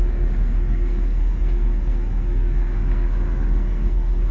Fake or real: fake